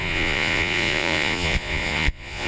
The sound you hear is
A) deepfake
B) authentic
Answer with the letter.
A